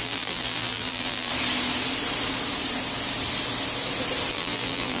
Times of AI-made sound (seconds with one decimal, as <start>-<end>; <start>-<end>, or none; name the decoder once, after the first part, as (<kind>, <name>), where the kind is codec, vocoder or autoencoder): 0.0-1.3 (vocoder, BigVGAN v2); 4.3-5.0